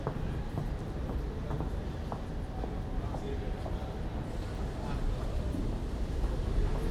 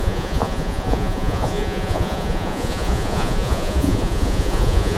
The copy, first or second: second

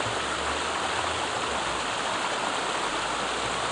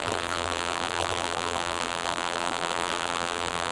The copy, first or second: second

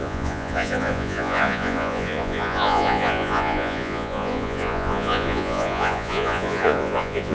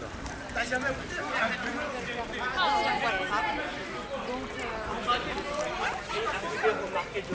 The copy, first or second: first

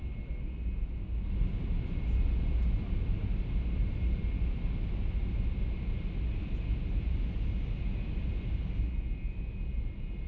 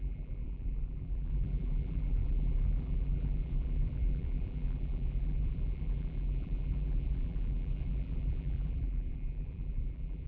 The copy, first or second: second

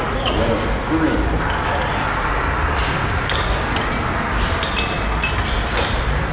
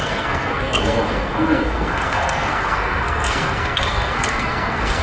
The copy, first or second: second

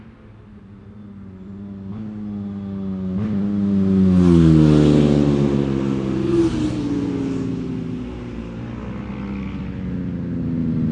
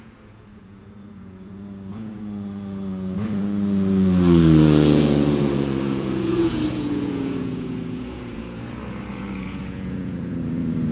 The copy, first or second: second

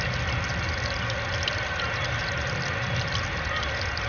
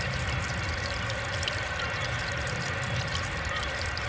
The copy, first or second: second